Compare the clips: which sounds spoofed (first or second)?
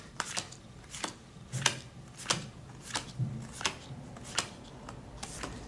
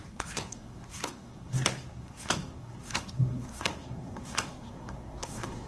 second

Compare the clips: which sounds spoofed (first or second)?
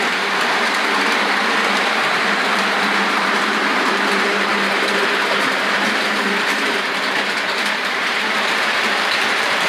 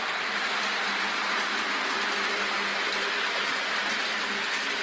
first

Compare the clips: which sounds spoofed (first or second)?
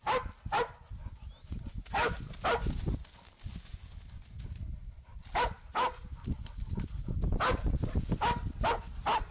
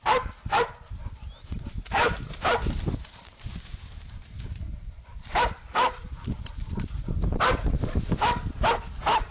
second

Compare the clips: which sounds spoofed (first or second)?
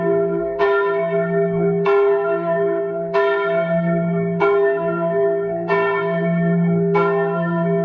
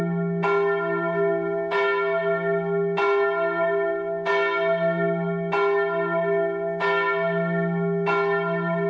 first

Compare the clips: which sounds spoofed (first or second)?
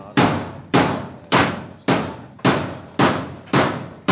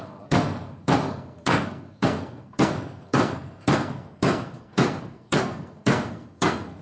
second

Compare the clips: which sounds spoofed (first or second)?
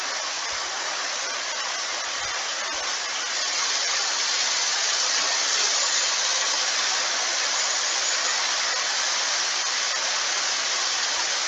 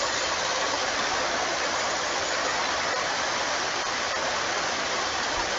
second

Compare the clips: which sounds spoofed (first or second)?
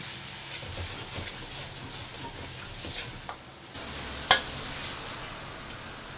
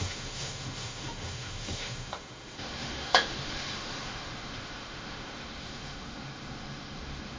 second